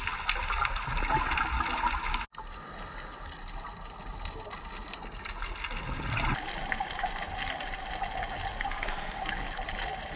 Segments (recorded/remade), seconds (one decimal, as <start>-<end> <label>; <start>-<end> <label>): 0.0-8.7 recorded; 8.7-9.2 remade; 9.2-10.2 recorded